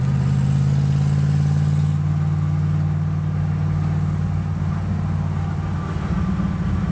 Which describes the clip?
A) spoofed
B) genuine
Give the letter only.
B